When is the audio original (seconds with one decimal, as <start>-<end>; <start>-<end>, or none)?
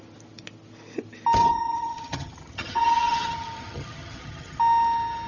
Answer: 0.0-1.4; 4.6-5.3